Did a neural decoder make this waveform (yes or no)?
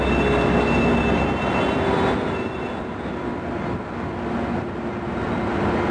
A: no